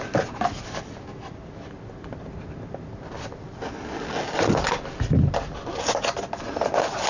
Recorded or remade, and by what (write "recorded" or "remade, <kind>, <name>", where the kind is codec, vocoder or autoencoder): recorded